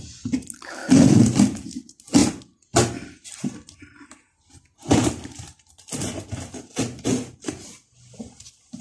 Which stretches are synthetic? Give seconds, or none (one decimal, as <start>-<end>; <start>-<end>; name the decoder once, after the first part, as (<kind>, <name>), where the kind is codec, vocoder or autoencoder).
0.8-1.4 (vocoder, BigVGAN v2)

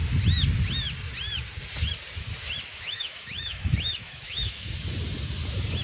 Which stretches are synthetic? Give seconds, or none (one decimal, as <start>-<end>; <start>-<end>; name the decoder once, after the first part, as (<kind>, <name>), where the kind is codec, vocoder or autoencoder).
2.7-4.7 (autoencoder, DAC-VAE)

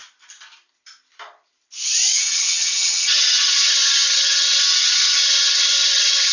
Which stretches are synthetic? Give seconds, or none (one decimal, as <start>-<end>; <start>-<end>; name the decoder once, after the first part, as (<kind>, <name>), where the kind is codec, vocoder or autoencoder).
2.1-6.3 (vocoder, HiFi-GAN)